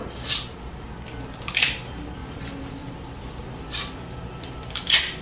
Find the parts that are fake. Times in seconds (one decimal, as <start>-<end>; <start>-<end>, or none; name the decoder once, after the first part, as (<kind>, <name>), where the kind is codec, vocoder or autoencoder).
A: 1.5-5.2 (vocoder, BigVGAN v2)